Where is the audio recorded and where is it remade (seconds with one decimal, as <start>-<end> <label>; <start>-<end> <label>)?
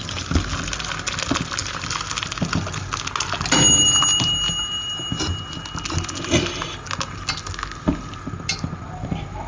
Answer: 0.0-9.5 recorded